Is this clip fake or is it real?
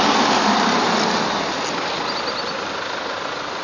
real